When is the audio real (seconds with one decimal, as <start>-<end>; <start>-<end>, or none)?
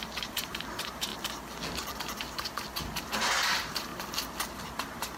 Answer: 1.1-3.0; 3.9-4.6